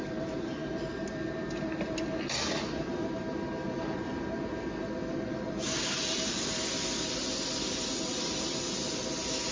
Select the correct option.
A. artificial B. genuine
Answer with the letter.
B